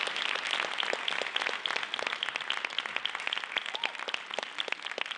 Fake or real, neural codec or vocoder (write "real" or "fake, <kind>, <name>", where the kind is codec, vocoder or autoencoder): real